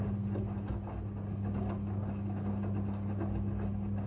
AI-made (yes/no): no